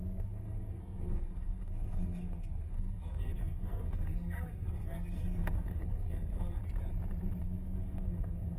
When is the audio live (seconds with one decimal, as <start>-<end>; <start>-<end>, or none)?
6.6-7.4